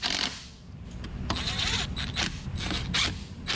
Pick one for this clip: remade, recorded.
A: recorded